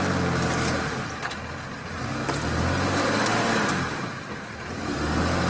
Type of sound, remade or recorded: recorded